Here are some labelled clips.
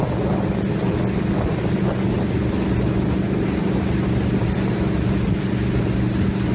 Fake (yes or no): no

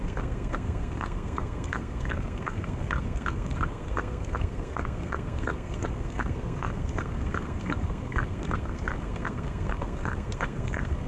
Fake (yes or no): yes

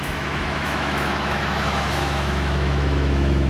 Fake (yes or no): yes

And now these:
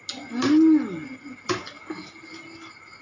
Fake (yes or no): no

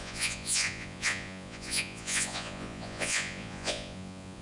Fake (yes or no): yes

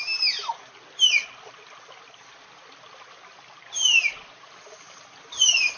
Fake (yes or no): no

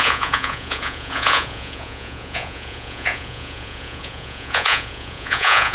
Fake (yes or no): yes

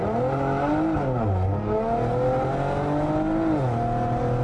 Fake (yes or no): no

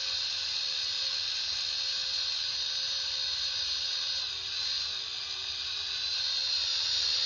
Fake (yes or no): no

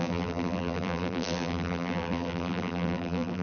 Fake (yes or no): yes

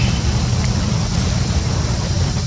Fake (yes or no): yes